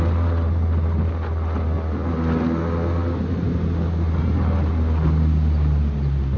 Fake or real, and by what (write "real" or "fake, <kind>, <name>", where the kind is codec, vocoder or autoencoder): real